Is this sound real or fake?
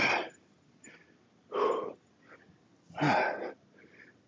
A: fake